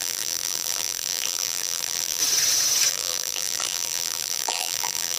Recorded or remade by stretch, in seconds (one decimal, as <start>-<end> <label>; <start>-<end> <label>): 0.0-2.2 remade; 2.2-2.9 recorded; 2.9-5.2 remade